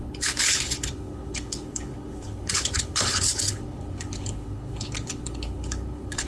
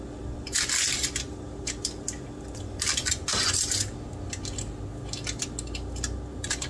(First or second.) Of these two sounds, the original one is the second